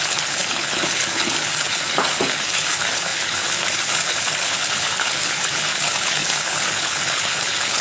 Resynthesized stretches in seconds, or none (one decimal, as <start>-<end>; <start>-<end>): 0.0-7.8